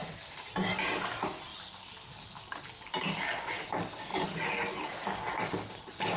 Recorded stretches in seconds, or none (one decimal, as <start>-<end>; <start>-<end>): 0.0-6.2